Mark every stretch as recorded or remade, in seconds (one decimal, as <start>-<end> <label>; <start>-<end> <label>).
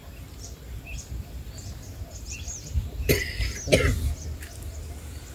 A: 0.0-3.2 remade; 3.2-5.3 recorded